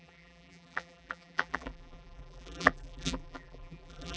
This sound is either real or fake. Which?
fake